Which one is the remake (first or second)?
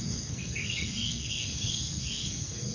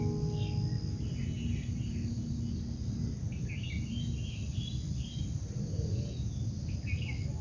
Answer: first